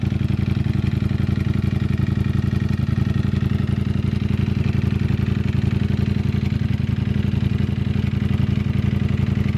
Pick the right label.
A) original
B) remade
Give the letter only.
A